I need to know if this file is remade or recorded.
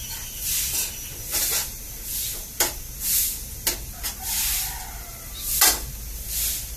recorded